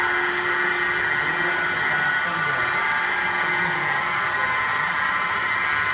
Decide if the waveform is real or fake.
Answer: real